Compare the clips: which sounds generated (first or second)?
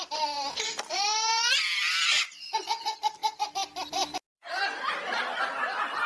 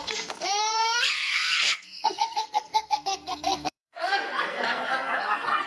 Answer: second